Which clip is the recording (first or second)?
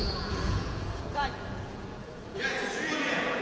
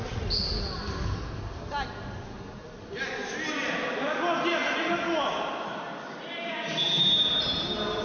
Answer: second